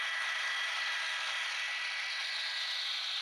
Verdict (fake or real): real